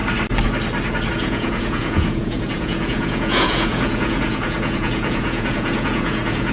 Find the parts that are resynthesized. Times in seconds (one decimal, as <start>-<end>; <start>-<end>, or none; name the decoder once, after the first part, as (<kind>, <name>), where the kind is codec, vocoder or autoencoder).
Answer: 1.1-6.5 (vocoder, Vocos)